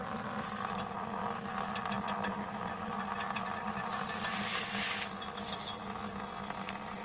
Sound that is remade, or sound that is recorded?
recorded